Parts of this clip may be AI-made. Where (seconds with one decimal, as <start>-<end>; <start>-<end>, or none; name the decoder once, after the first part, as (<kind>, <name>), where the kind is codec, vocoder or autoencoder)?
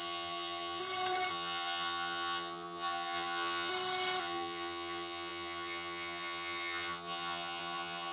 0.0-0.8 (vocoder, HiFi-GAN); 1.3-3.7; 4.2-8.1